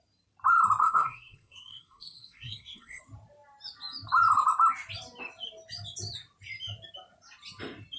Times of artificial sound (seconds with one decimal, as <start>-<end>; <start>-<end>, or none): 0.8-3.0